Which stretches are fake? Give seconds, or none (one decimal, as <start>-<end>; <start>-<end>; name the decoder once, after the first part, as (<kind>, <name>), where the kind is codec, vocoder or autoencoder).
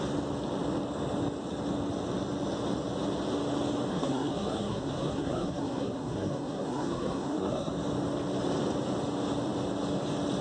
3.9-7.7 (codec, SNAC)